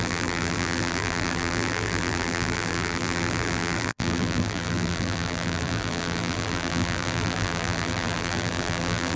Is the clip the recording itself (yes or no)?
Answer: no